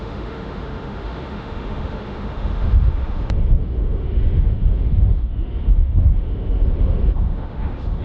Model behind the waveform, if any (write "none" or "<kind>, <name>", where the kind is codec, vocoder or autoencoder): autoencoder, DAC-VAE